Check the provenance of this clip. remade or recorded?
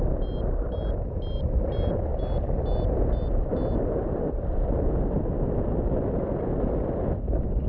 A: recorded